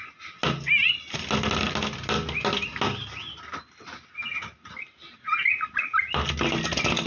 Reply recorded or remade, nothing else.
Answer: recorded